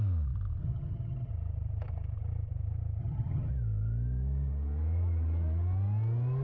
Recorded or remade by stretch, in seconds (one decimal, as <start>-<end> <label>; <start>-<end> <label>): 0.0-0.6 recorded; 0.6-1.3 remade; 1.3-3.0 recorded; 3.0-3.5 remade; 3.5-6.4 recorded